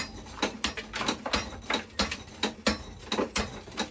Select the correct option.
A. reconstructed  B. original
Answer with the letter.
B